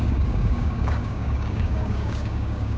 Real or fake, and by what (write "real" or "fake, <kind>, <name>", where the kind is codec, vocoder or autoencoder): fake, codec, DAC